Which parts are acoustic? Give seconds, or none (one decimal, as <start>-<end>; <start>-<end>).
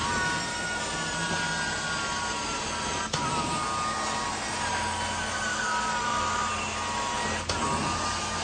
0.0-5.5; 6.4-8.4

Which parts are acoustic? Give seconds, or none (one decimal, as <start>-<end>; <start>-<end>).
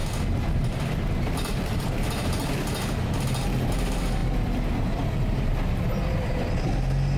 0.0-7.2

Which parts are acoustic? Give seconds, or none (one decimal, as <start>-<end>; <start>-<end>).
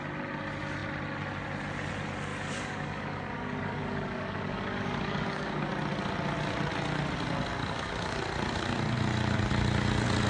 0.0-2.3; 5.7-7.6; 8.2-10.3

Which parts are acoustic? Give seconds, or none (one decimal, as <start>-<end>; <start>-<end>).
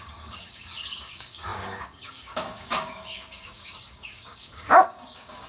none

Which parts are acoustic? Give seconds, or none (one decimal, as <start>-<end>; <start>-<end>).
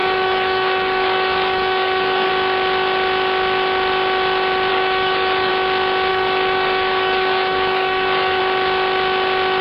2.3-4.7; 5.5-6.1; 8.4-9.6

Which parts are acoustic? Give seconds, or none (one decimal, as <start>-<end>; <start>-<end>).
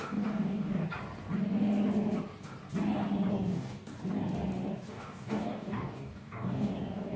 0.8-3.3; 3.9-4.9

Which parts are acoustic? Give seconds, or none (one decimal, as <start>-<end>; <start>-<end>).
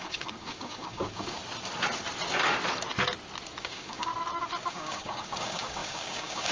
1.4-3.6; 4.1-4.7